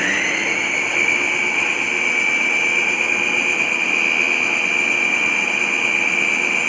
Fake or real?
real